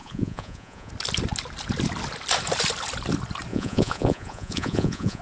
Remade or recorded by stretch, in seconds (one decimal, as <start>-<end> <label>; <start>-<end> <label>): 0.0-0.9 remade; 0.9-3.5 recorded; 3.5-5.2 remade